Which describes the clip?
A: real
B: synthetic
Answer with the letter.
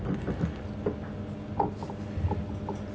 A